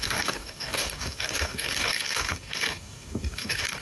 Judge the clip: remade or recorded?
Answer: remade